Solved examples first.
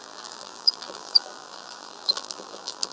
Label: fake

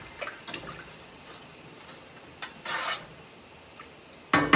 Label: real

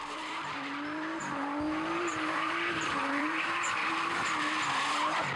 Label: fake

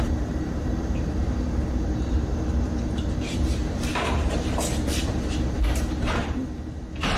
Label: fake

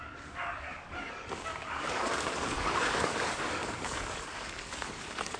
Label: fake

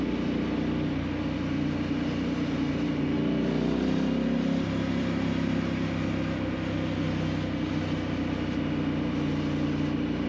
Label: real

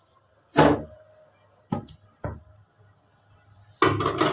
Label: real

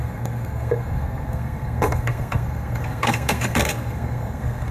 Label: fake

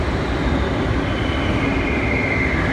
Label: real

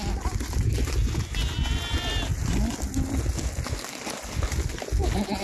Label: real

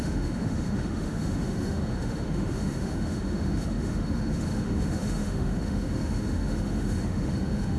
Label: fake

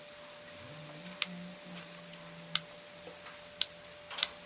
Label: real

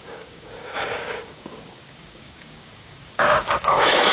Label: fake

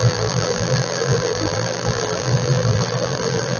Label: fake